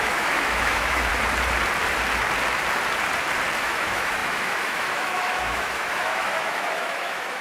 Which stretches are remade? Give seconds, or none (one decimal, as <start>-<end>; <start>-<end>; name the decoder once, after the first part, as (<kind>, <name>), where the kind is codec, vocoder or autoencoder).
0.0-1.1 (autoencoder, DAC-VAE); 3.6-7.4